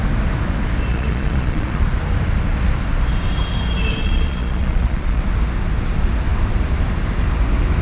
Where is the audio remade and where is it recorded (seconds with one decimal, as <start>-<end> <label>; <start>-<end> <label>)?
0.0-0.9 recorded; 0.9-1.9 remade; 1.9-4.0 recorded; 4.0-5.2 remade; 5.2-7.8 recorded